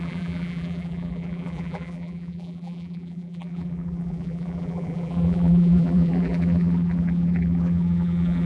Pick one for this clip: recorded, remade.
remade